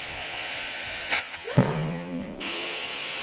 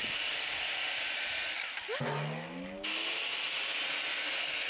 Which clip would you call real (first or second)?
second